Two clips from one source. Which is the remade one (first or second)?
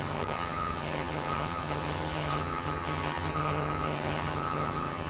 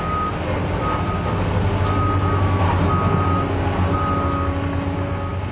first